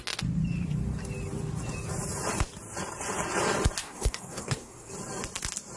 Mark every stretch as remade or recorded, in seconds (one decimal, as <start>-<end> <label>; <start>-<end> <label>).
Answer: 0.0-3.8 recorded; 3.8-4.9 remade; 4.9-5.8 recorded

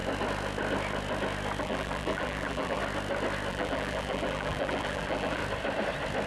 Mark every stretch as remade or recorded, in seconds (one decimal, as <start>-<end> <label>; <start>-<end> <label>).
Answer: 0.0-1.6 recorded; 1.6-2.8 remade; 2.8-3.5 recorded; 3.5-5.4 remade; 5.4-6.3 recorded

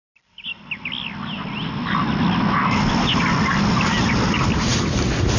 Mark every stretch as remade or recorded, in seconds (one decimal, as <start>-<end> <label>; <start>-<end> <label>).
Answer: 0.0-5.4 recorded

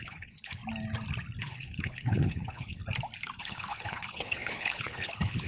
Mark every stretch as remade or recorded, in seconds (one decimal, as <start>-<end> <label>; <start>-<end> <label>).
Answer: 0.0-0.6 remade; 0.6-1.4 recorded; 1.4-2.8 remade; 2.8-3.4 recorded; 3.4-5.5 remade